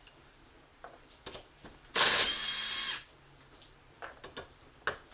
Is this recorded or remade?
recorded